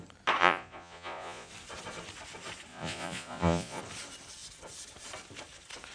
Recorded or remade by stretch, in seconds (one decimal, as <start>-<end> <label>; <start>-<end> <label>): 0.0-0.4 recorded; 0.4-1.5 remade; 1.5-2.7 recorded; 2.7-3.8 remade; 3.8-5.9 recorded

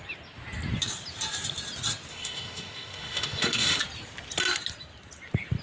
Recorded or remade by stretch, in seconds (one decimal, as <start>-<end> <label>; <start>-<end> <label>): 0.0-2.1 recorded; 2.1-3.8 remade; 3.8-5.6 recorded

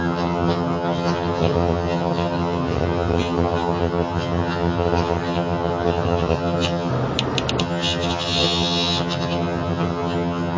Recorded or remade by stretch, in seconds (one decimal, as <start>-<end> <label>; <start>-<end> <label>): 0.0-6.9 remade; 6.9-7.6 recorded; 7.6-10.6 remade

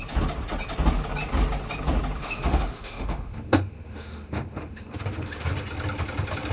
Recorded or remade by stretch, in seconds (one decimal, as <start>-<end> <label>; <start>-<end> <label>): 0.0-2.2 recorded; 2.2-5.5 remade; 5.5-6.5 recorded